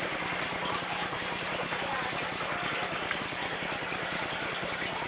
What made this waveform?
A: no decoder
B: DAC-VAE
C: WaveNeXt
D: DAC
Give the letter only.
A